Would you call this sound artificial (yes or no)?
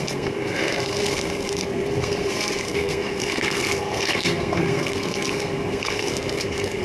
yes